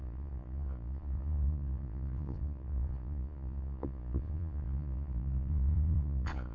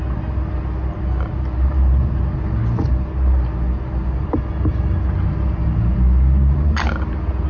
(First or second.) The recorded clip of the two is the second